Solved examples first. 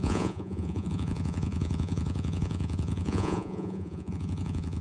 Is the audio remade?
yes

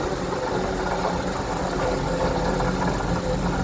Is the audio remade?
no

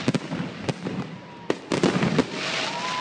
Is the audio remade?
no